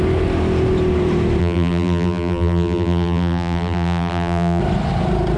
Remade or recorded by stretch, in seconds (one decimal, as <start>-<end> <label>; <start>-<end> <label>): 0.0-1.4 recorded; 1.4-4.6 remade; 4.6-5.4 recorded

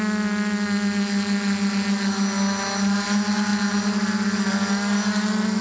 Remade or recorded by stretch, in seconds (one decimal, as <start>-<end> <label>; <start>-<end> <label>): 0.0-5.6 recorded